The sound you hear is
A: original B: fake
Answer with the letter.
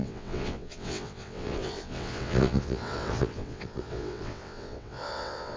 B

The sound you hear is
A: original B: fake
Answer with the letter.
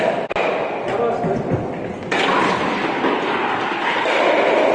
A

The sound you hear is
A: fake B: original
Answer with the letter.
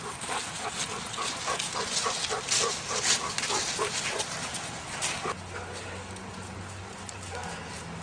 B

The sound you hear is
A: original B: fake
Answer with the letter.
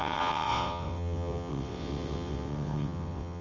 B